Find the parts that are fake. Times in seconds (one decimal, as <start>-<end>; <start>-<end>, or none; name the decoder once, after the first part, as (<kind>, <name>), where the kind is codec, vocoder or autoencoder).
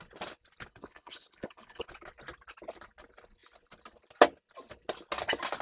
0.7-1.9 (codec, HILCodec)